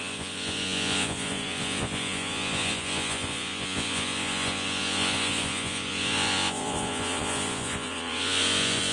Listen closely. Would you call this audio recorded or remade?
remade